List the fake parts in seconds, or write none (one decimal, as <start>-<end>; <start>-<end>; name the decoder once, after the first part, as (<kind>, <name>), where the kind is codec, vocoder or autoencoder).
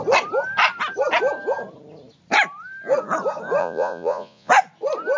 3.6-4.5 (vocoder, Vocos)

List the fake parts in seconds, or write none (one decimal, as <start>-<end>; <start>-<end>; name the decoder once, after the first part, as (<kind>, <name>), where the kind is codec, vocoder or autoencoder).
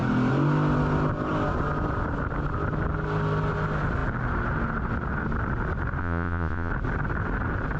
6.0-6.7 (vocoder, Vocos)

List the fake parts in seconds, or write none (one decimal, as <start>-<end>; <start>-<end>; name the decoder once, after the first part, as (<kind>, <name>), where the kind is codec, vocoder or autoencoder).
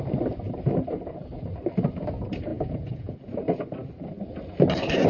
2.5-3.1 (vocoder, Vocos)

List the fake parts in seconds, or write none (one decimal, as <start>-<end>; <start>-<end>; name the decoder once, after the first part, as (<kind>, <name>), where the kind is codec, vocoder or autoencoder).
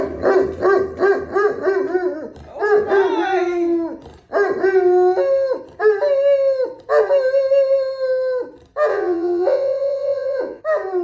8.9-10.6 (vocoder, Vocos)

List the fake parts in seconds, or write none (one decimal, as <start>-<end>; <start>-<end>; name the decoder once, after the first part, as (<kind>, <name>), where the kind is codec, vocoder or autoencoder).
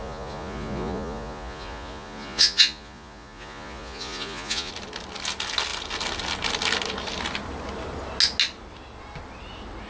0.0-4.7 (vocoder, Vocos)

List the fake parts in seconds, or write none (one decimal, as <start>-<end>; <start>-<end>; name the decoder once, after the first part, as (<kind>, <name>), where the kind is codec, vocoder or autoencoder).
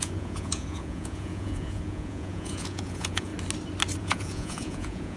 0.0-3.3 (vocoder, Vocos); 4.0-5.2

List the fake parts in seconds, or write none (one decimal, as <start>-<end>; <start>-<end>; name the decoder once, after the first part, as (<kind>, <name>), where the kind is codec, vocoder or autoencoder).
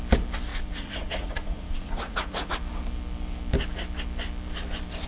0.5-2.5 (vocoder, Vocos)